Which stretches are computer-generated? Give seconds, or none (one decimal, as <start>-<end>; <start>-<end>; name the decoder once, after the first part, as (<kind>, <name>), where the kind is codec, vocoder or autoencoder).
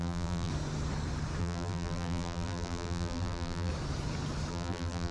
0.0-0.5 (vocoder, BigVGAN v2); 1.4-3.7; 4.5-5.1